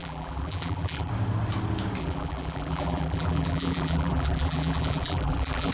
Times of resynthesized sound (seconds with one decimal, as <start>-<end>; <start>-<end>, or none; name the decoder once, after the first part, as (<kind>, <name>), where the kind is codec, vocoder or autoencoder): 0.0-1.1 (vocoder, BigVGAN v2); 2.0-5.7

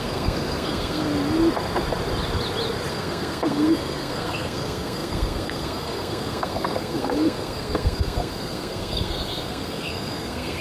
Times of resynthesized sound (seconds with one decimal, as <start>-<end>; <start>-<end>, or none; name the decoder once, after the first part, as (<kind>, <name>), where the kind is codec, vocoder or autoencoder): 0.0-1.1 (codec, SNAC); 2.9-10.6

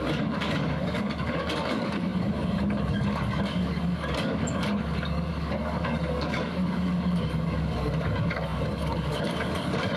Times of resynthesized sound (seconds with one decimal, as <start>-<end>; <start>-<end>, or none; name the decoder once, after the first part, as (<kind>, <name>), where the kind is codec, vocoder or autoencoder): 0.0-10.0 (codec, DAC)

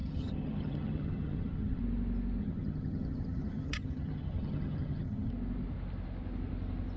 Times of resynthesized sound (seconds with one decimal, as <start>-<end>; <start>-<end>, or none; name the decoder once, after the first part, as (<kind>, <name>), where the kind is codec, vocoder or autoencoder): 0.0-1.8 (vocoder, HiFi-GAN); 2.4-5.3

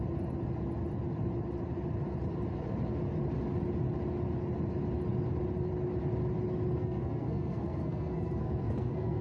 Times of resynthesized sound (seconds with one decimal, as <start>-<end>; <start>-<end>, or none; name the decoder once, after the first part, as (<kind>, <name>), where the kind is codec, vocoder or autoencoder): 6.8-9.2 (codec, SNAC)

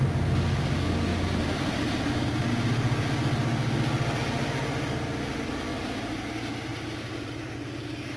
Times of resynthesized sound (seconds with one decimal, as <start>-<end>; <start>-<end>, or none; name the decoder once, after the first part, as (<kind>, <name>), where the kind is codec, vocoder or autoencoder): 1.1-2.5 (vocoder, BigVGAN v2); 5.7-6.3; 6.7-7.5